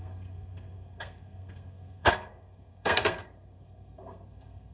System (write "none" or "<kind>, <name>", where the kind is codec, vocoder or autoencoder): codec, SNAC